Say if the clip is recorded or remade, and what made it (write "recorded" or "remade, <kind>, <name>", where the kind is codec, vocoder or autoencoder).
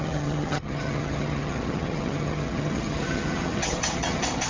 remade, vocoder, HiFi-GAN